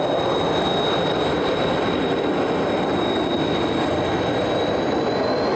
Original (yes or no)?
yes